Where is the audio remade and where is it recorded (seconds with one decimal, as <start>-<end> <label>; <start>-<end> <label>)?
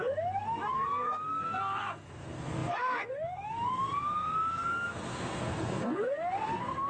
0.0-6.9 remade